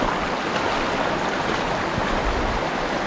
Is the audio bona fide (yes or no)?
yes